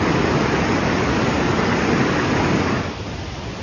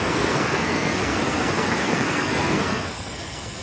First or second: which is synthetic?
second